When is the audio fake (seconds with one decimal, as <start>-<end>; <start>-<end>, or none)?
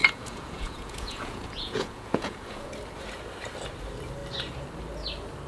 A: 0.0-2.7